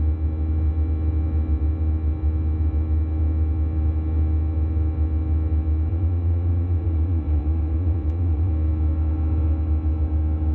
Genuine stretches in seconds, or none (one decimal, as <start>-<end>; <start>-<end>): 0.0-5.9; 8.5-10.5